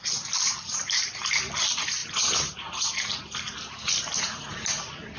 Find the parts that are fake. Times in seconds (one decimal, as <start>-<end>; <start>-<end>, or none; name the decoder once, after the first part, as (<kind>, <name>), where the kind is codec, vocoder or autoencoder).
0.0-1.0 (vocoder, BigVGAN v2)